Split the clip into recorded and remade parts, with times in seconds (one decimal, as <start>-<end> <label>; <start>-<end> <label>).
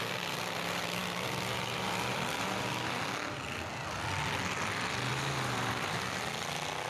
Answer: 0.0-6.9 recorded